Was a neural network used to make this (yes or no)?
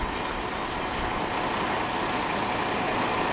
no